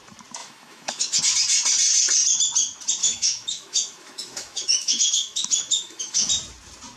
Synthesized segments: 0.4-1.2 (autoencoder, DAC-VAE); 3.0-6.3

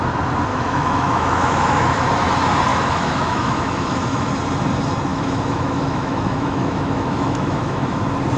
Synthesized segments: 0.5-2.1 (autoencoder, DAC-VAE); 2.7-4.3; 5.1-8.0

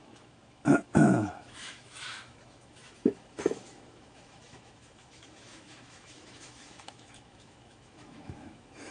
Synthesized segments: 0.0-8.9 (autoencoder, DAC-VAE)

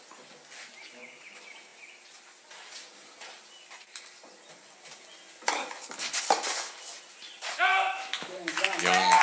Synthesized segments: 7.7-8.6 (autoencoder, DAC-VAE)

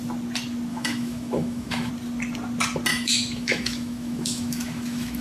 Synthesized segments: 0.7-1.9 (autoencoder, DAC-VAE); 2.9-5.2

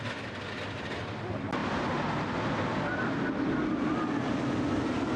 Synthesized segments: none

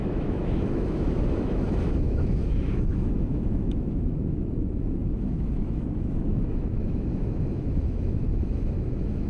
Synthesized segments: 0.0-9.3 (autoencoder, DAC-VAE)